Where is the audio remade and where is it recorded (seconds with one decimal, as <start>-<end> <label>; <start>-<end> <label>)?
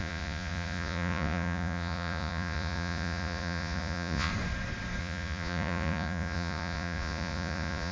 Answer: 0.0-4.3 remade; 4.3-5.0 recorded; 5.0-7.9 remade